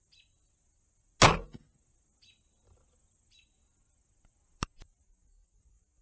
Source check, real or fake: real